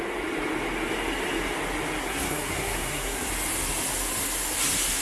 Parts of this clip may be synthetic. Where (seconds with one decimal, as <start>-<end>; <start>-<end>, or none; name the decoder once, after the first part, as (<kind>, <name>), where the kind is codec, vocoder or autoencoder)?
2.0-3.3 (codec, SNAC)